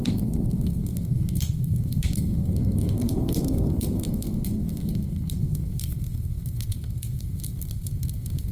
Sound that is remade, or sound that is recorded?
remade